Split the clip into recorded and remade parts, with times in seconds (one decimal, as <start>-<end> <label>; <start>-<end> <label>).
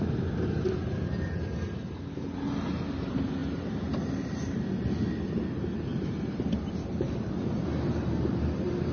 0.0-8.9 recorded